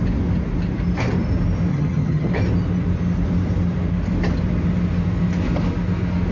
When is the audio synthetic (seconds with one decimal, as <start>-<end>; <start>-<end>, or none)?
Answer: 1.7-2.3